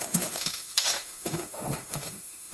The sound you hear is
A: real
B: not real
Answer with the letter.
B